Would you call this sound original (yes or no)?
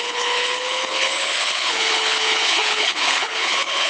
no